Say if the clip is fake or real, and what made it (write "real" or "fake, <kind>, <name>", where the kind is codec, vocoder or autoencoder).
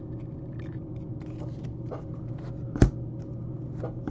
real